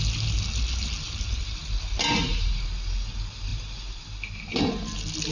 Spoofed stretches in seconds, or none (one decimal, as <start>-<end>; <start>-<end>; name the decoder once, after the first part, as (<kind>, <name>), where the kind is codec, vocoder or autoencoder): none